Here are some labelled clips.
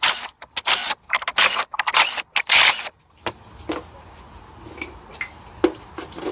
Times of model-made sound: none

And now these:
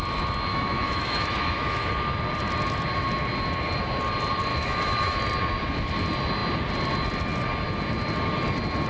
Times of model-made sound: 0.5-1.9 (autoencoder, DAC-VAE); 4.5-5.2

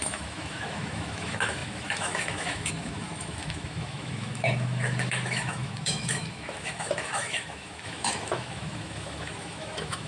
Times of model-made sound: 0.0-10.1 (autoencoder, DAC-VAE)

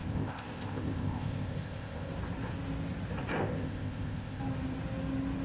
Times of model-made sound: 0.0-2.1 (codec, ZipCodec); 3.4-4.4

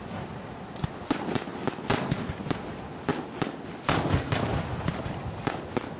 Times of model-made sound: none